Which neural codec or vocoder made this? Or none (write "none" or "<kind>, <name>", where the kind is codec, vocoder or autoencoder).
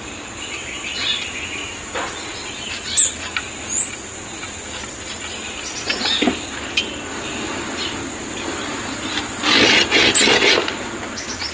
none